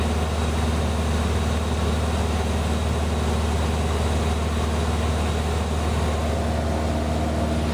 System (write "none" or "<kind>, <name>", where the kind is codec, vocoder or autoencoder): none